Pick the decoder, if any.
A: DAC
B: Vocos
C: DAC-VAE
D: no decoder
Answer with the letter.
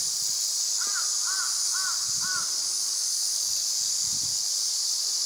D